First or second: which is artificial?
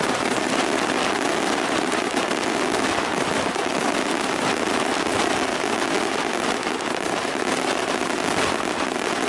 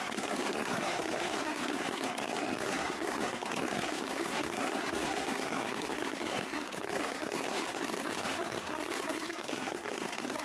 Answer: second